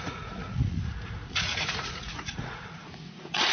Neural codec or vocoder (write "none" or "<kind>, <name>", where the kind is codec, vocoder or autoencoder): vocoder, Vocos